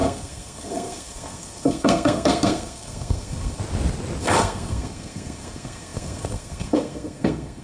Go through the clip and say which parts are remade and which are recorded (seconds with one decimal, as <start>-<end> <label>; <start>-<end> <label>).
0.0-3.6 remade; 3.6-4.2 recorded; 4.2-7.6 remade